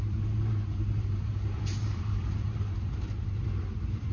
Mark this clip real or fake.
fake